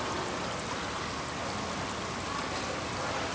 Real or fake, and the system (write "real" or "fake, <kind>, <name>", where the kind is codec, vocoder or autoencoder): real